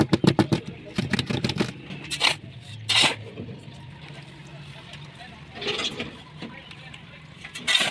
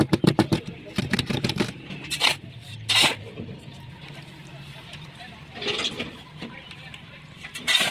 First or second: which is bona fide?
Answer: first